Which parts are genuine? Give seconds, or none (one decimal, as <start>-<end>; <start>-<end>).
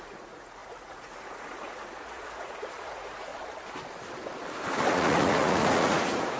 3.3-4.9